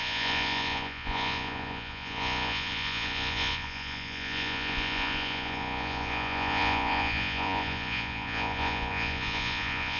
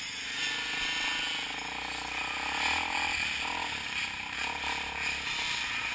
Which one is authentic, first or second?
second